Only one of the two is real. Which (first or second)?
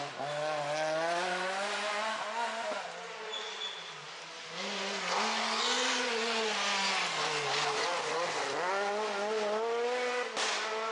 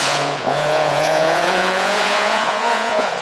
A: first